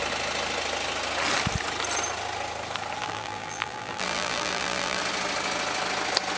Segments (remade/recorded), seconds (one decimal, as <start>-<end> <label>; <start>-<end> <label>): 0.0-3.0 recorded; 3.0-5.0 remade; 5.0-6.4 recorded